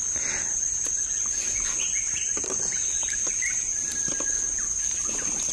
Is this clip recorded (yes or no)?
yes